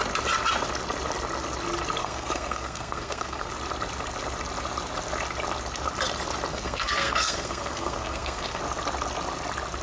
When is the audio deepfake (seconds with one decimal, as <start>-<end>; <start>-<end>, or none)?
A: 2.0-3.5; 6.5-8.6